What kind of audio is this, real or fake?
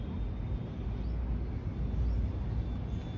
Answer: real